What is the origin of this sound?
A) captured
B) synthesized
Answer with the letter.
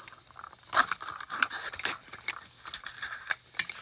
A